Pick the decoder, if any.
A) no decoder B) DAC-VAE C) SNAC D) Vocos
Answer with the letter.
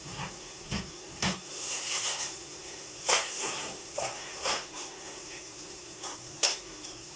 C